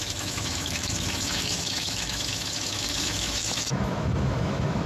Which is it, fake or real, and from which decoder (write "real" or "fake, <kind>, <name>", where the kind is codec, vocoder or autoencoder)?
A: fake, autoencoder, DAC-VAE